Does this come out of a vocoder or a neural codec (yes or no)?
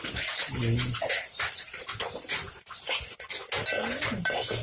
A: no